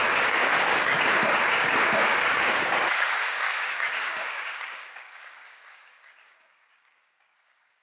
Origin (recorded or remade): remade